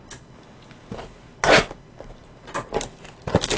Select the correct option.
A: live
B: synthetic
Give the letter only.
A